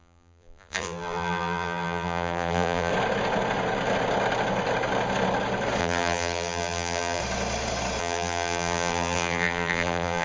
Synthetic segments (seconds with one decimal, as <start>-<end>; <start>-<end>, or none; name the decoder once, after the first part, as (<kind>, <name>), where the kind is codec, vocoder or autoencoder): 0.0-2.9 (vocoder, BigVGAN v2); 5.8-7.2; 8.0-10.2